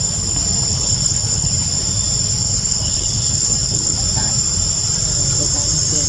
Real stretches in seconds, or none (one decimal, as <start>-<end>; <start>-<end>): 0.0-0.7; 1.5-2.4; 4.0-6.1